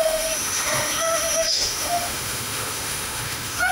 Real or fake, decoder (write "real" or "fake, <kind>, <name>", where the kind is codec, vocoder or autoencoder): fake, autoencoder, DAC-VAE